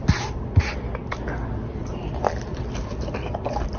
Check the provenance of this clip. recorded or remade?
recorded